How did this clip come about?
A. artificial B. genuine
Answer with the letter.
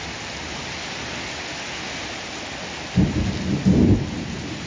B